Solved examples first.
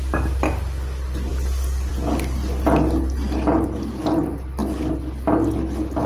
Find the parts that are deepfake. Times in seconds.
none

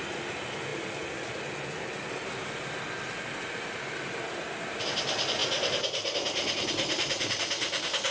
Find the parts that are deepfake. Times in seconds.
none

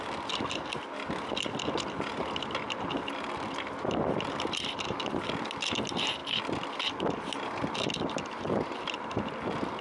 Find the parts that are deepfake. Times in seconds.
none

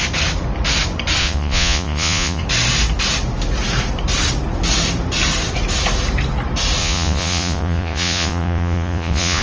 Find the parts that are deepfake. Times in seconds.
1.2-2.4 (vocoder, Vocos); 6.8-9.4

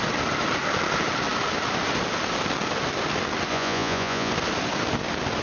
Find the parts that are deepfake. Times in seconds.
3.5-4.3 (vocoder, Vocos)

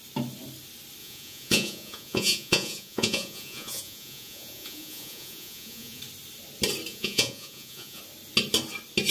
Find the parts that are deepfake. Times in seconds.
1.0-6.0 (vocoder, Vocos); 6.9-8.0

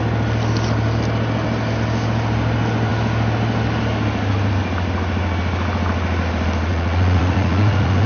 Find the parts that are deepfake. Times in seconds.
6.7-8.1 (vocoder, Vocos)